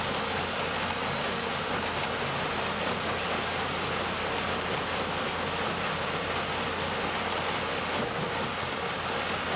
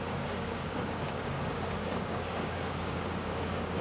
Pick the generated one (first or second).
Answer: second